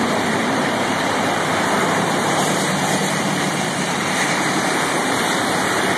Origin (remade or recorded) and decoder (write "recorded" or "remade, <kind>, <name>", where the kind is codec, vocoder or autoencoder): remade, vocoder, BigVGAN v2